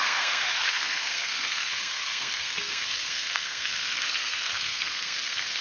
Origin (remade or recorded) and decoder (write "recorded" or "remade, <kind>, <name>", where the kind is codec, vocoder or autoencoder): remade, codec, SNAC